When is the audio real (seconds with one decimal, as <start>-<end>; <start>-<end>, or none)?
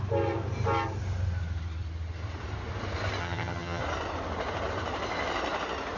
0.0-3.2; 3.8-6.0